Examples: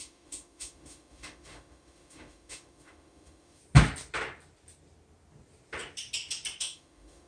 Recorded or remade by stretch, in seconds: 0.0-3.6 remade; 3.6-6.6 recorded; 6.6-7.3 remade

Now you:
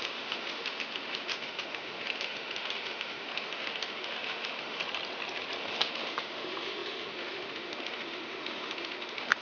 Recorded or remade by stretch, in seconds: 0.0-4.8 remade; 4.8-5.6 recorded; 5.6-9.4 remade

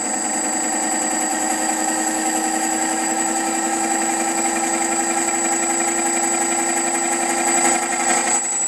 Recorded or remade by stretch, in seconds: 0.0-1.3 recorded; 1.3-5.3 remade; 5.3-8.7 recorded

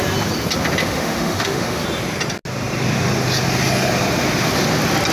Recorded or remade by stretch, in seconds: 0.0-0.8 recorded; 0.8-1.8 remade; 1.8-5.1 recorded

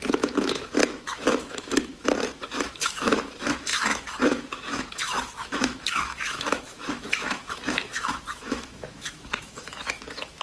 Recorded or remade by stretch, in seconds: 0.0-10.4 remade

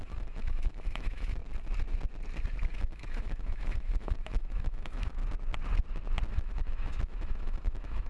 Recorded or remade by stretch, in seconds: 0.0-1.4 remade; 1.4-2.7 recorded; 2.7-5.2 remade; 5.2-6.3 recorded; 6.3-8.1 remade

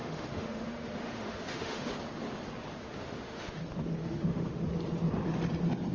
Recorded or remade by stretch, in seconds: 0.0-1.9 remade; 1.9-2.8 recorded; 2.8-3.6 remade; 3.6-4.0 recorded; 4.0-4.6 remade; 4.6-5.9 recorded